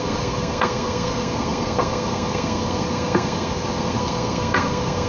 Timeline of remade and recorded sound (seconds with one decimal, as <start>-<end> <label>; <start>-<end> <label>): 0.0-5.1 remade